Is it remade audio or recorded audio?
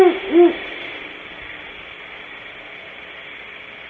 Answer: recorded